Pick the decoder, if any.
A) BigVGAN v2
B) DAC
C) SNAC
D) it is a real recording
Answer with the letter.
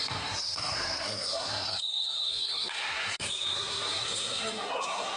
C